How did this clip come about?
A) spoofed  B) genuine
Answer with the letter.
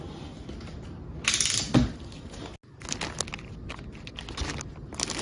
B